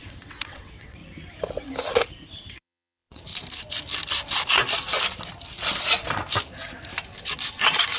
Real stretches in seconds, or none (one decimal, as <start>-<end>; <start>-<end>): 1.0-2.4; 3.3-8.0